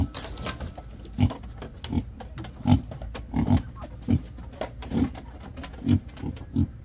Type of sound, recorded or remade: recorded